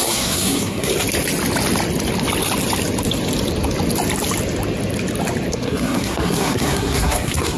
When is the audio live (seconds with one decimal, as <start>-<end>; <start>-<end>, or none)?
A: 0.9-5.5